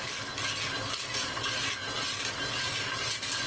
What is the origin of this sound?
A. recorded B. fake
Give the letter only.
A